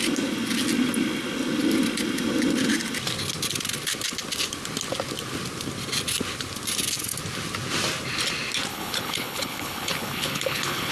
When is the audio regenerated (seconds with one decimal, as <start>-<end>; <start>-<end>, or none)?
8.7-10.9